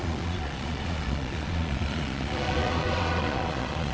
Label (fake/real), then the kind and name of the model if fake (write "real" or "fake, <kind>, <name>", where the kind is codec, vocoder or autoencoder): fake, vocoder, Vocos